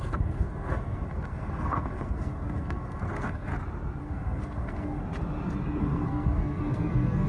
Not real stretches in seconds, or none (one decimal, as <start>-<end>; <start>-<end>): 0.0-3.5; 4.0-5.0; 5.8-7.3